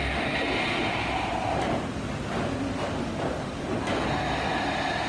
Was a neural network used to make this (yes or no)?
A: no